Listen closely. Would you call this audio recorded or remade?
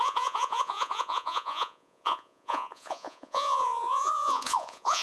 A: remade